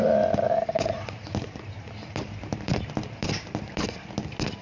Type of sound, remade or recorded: recorded